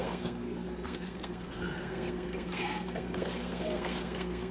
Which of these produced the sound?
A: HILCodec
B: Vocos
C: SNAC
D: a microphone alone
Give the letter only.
C